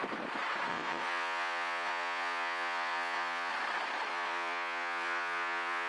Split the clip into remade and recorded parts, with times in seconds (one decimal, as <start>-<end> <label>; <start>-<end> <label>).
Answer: 0.0-0.7 recorded; 0.7-3.5 remade; 3.5-4.1 recorded; 4.1-5.9 remade